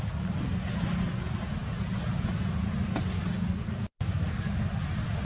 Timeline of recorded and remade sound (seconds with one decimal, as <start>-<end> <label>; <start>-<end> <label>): 0.0-1.6 recorded; 1.6-2.7 remade; 2.7-5.2 recorded